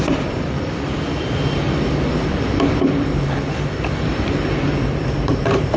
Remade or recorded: remade